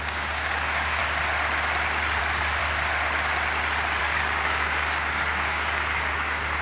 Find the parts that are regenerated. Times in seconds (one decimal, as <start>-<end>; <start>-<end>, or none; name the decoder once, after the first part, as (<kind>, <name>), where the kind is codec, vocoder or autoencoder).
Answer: 0.0-1.0 (codec, DAC); 2.2-2.6; 4.0-6.6